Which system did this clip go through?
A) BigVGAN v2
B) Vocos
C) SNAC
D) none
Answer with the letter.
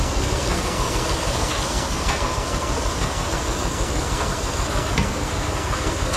C